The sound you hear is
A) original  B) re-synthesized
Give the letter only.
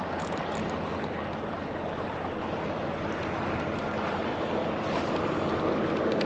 A